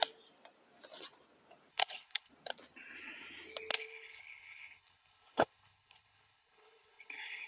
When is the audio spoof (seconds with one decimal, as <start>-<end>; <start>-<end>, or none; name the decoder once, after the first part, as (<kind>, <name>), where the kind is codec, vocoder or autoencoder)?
1.7-2.3 (codec, HILCodec); 3.7-7.5